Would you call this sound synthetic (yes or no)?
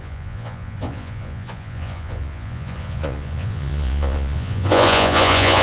yes